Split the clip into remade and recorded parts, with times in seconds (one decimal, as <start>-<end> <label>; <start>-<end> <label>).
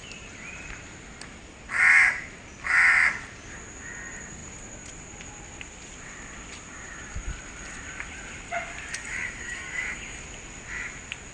0.0-9.0 recorded; 9.0-10.2 remade; 10.2-11.3 recorded